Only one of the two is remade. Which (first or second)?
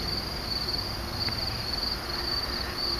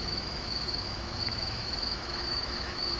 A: second